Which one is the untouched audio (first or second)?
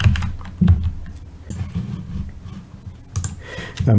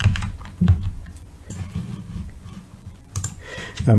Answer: first